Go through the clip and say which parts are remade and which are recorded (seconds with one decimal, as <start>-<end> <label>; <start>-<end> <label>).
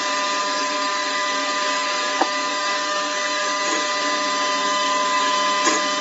0.0-0.4 recorded; 0.4-3.6 remade; 3.6-4.6 recorded; 4.6-5.3 remade; 5.3-6.0 recorded